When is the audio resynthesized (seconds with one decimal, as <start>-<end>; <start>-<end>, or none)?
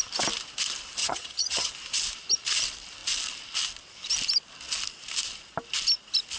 1.0-1.7